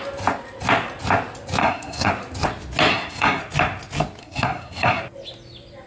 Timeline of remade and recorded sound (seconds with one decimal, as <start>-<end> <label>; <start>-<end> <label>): 0.0-1.6 recorded; 1.6-2.1 remade; 2.1-2.9 recorded; 2.9-3.4 remade; 3.4-4.2 recorded; 4.2-5.0 remade; 5.0-5.9 recorded